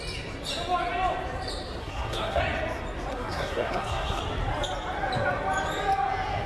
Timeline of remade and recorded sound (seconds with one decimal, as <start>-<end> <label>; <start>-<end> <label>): 0.0-1.8 recorded; 1.8-2.4 remade; 2.4-3.1 recorded; 3.1-4.2 remade; 4.2-6.5 recorded